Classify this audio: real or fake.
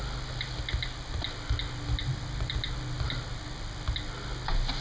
real